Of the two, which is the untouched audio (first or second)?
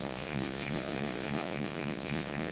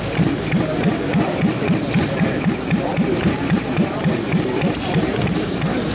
second